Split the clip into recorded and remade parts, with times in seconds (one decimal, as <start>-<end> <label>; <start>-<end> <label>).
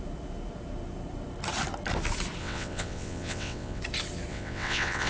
0.0-2.4 recorded; 2.4-3.8 remade; 3.8-4.3 recorded; 4.3-5.1 remade